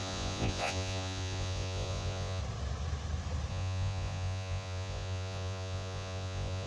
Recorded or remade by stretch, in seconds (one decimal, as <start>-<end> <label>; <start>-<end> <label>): 0.0-2.4 remade; 2.4-3.5 recorded; 3.5-6.7 remade